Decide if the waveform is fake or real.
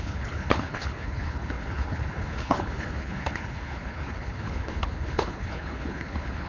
fake